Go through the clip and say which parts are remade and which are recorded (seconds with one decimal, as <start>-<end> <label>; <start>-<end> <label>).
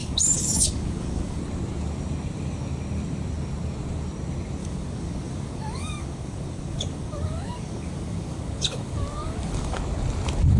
0.0-1.4 remade; 1.4-4.6 recorded; 4.6-9.8 remade; 9.8-10.6 recorded